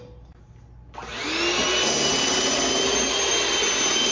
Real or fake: real